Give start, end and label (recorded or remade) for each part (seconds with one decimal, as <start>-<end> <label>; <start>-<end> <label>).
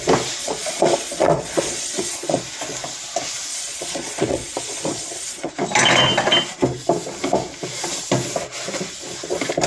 0.0-0.4 recorded; 0.4-2.4 remade; 2.4-3.5 recorded; 3.5-5.5 remade; 5.5-9.7 recorded